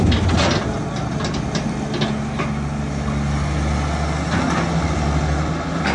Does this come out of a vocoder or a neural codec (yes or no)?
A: no